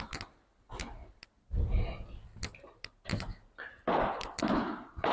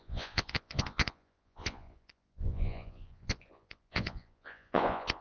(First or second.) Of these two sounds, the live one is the first